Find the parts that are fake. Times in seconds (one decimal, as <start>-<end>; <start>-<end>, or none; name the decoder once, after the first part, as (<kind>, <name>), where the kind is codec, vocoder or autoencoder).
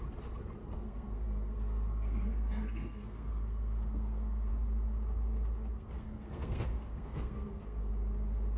0.6-4.5 (codec, SNAC); 5.7-7.9